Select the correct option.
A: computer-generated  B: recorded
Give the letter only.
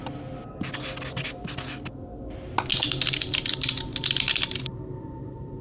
B